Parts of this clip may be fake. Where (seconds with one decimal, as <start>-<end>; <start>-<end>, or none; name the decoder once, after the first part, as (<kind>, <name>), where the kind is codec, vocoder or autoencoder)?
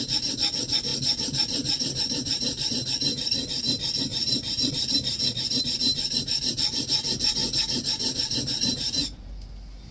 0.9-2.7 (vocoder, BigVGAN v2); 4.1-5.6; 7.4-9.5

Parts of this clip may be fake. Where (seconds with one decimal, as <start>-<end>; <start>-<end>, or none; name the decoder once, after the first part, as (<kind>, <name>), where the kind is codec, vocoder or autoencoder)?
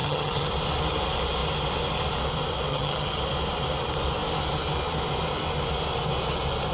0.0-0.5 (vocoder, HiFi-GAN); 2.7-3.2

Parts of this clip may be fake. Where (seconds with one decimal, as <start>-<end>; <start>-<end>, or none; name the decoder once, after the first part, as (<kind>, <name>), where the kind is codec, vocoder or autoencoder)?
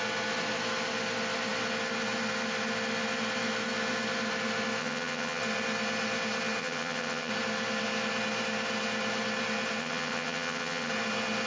4.8-5.4 (vocoder, HiFi-GAN); 6.6-7.3; 9.8-10.9